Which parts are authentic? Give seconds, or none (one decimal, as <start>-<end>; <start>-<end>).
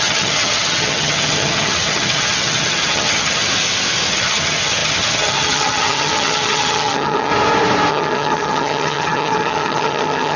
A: 3.4-4.1; 7.3-7.9